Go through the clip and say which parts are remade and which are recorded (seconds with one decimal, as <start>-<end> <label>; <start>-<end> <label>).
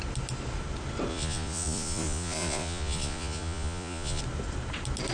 0.0-1.1 recorded; 1.1-4.2 remade; 4.2-5.1 recorded